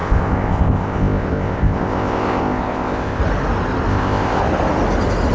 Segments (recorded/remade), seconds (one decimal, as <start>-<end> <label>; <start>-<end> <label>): 0.0-3.2 remade; 3.2-3.9 recorded; 3.9-4.4 remade; 4.4-5.3 recorded